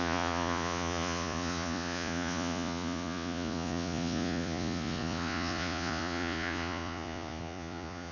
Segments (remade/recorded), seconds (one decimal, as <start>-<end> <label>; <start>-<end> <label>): 0.0-8.1 remade